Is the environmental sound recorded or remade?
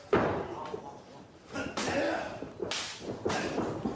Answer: recorded